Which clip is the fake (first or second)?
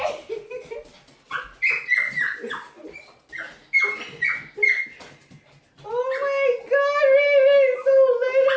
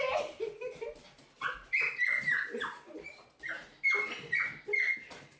second